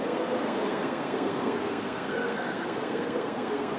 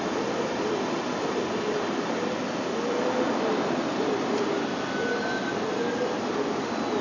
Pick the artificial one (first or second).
first